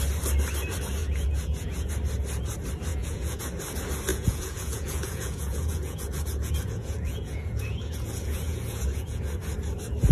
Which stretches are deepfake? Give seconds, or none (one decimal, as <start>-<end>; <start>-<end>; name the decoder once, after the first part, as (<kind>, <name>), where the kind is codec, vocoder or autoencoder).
1.0-1.9 (vocoder, Vocos); 2.9-3.4; 4.1-9.2